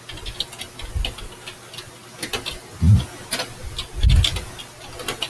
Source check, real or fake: real